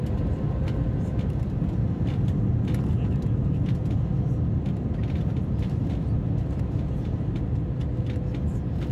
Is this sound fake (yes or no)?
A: no